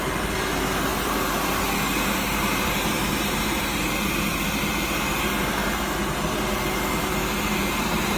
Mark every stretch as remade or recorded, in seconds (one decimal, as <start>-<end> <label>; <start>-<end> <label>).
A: 0.0-8.2 recorded